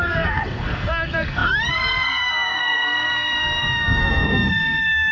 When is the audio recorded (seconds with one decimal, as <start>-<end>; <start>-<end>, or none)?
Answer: none